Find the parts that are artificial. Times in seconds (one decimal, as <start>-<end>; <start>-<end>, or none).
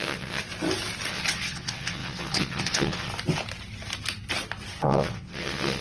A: 0.0-0.4; 1.1-3.1; 4.8-5.8